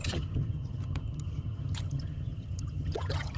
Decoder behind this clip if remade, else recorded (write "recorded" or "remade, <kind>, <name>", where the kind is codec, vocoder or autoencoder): remade, vocoder, HiFi-GAN